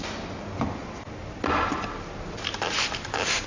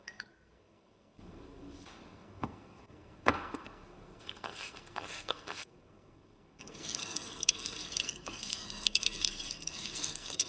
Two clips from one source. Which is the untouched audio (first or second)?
first